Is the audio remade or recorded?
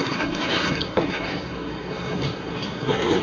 remade